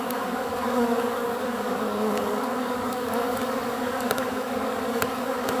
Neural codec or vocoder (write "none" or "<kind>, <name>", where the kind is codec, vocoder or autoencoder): codec, DAC